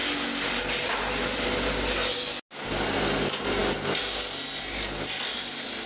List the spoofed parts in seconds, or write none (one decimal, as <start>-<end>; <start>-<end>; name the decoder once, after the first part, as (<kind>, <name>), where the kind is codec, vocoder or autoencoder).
none